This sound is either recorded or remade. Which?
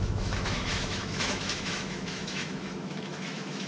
remade